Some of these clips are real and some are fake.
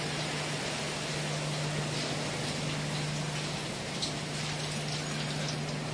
real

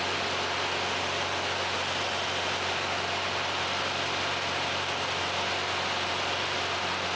real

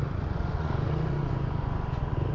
fake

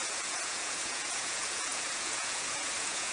fake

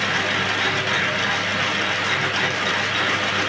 real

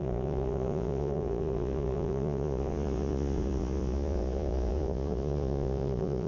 fake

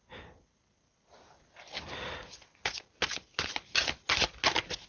real